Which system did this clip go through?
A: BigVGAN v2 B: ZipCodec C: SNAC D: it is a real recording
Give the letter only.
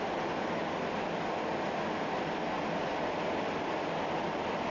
D